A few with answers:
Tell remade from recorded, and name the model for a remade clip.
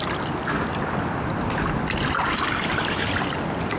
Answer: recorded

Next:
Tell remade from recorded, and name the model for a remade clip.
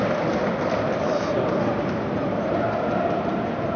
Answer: recorded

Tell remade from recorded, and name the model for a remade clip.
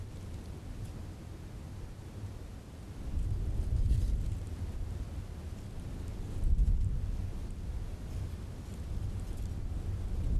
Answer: recorded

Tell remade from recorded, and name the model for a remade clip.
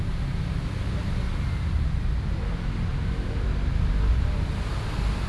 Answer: recorded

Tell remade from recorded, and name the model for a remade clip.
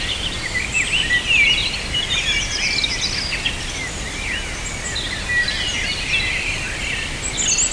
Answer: recorded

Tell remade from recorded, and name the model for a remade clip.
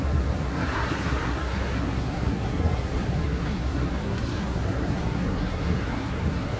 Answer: remade, codec, SNAC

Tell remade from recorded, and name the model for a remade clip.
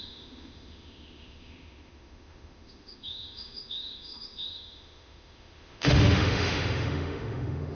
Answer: remade, autoencoder, DAC-VAE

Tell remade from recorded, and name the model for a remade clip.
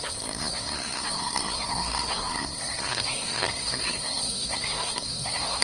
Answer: remade, codec, SNAC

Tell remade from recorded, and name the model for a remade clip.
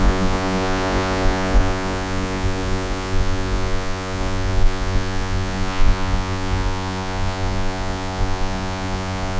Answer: remade, vocoder, Vocos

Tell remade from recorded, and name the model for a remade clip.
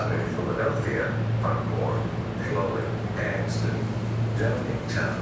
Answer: recorded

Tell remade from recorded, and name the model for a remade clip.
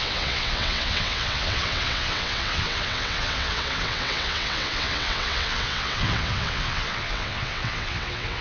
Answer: remade, vocoder, WaveNeXt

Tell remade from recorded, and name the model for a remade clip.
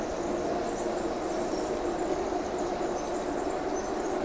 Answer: recorded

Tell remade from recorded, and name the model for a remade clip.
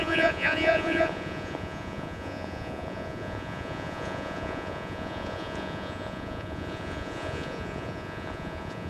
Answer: remade, vocoder, Vocos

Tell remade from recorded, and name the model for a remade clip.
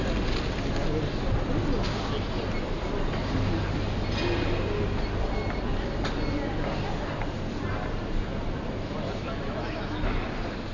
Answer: recorded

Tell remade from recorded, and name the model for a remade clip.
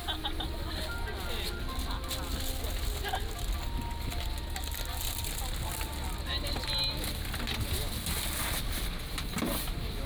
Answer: recorded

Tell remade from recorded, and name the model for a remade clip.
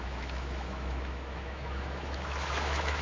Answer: remade, autoencoder, DAC-VAE